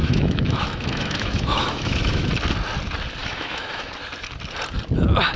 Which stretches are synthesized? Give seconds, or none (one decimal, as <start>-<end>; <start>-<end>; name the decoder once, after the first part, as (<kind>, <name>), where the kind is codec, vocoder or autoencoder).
0.0-2.3 (autoencoder, DAC-VAE); 3.2-3.9